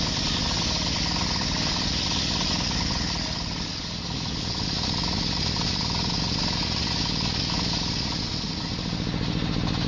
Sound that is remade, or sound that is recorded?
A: recorded